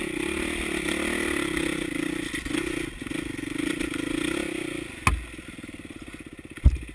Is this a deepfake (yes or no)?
no